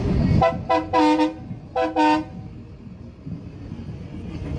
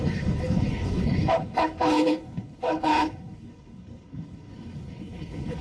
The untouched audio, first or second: first